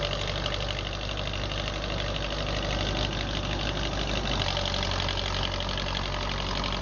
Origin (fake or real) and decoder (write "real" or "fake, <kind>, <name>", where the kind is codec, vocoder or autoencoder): real